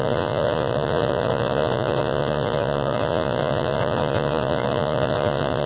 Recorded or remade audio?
remade